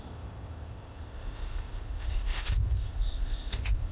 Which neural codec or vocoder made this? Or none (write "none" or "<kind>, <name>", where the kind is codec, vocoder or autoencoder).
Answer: codec, ZipCodec